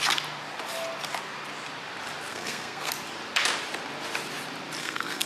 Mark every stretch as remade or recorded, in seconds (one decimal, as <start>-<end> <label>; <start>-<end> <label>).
0.0-2.3 recorded; 2.3-2.9 remade; 2.9-4.8 recorded; 4.8-5.3 remade